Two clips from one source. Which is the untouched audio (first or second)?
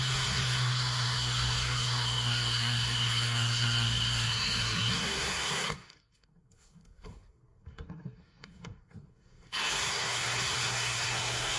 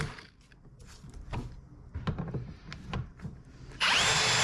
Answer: second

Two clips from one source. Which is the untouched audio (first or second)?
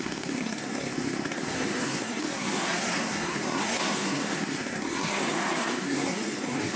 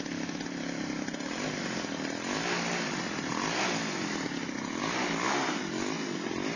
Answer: second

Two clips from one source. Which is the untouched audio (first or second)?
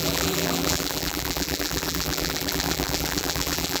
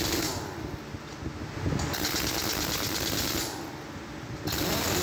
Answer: second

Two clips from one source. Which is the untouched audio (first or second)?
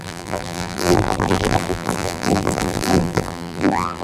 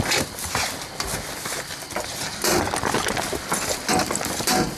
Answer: second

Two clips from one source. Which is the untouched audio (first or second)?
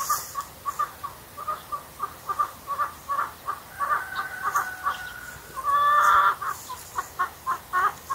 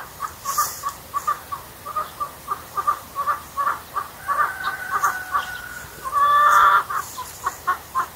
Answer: first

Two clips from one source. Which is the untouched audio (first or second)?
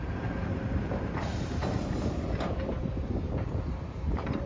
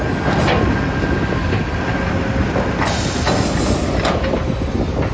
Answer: second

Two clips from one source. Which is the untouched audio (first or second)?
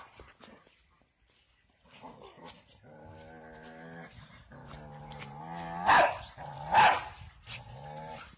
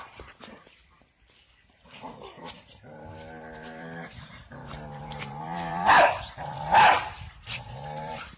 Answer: first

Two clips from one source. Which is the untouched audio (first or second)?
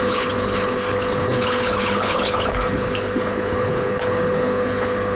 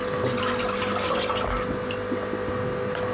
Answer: second